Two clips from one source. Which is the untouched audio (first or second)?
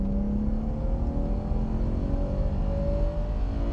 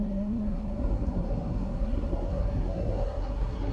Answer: first